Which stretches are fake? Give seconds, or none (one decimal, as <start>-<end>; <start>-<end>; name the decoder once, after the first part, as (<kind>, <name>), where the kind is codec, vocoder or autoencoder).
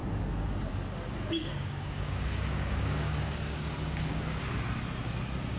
1.3-4.4 (codec, DAC)